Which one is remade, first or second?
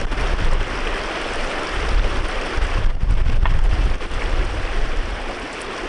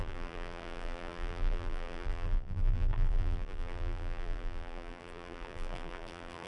second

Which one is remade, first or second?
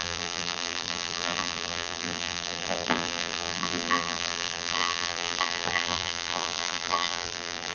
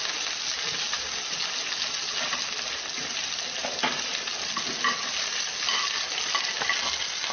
first